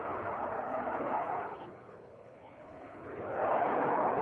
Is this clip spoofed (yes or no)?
yes